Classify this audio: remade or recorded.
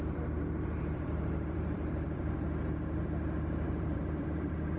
remade